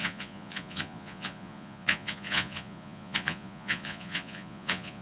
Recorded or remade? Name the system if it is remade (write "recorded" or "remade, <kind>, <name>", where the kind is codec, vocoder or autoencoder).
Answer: remade, vocoder, Vocos